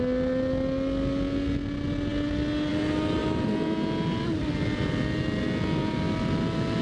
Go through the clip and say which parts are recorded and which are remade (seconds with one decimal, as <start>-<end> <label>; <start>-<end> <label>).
0.0-6.8 recorded